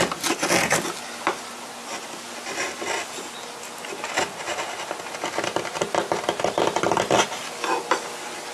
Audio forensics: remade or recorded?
recorded